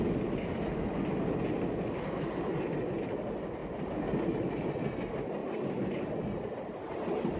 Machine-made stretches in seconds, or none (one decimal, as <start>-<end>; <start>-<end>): none